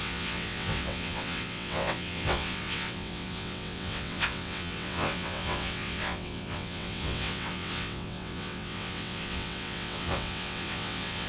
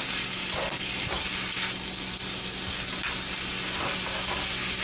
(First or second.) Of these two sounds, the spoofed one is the first